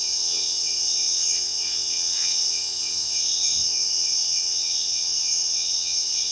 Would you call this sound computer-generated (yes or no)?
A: yes